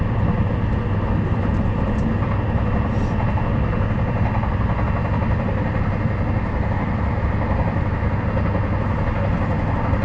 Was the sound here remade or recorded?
recorded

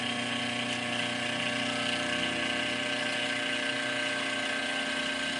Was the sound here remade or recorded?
recorded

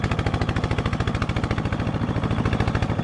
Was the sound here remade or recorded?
recorded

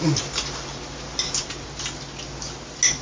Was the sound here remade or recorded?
recorded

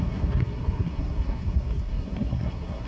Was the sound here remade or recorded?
remade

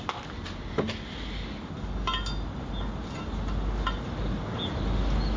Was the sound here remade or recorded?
recorded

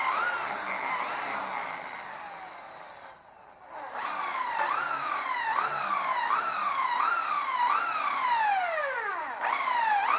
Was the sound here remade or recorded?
recorded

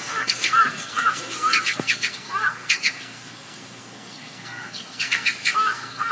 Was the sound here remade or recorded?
remade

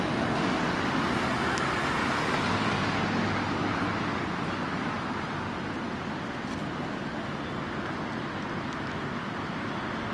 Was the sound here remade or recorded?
recorded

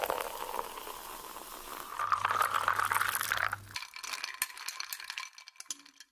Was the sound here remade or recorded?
recorded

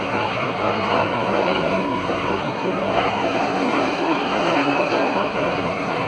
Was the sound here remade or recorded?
remade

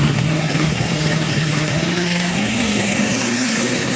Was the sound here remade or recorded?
remade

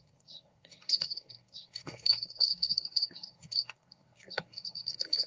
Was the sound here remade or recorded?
remade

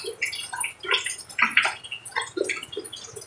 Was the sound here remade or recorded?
recorded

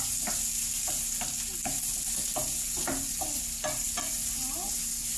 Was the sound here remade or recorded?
recorded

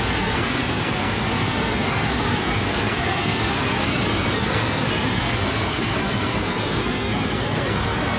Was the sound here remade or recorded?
remade